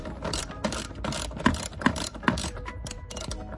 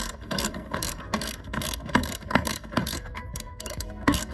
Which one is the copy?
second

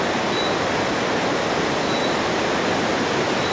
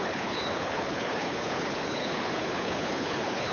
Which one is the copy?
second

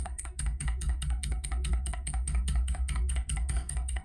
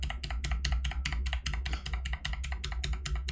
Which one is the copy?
first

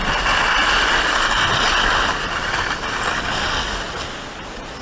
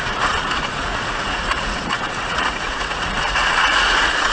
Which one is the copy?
second